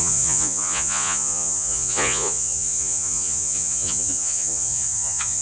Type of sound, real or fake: fake